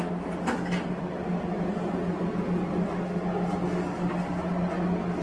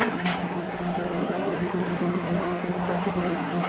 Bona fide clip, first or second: first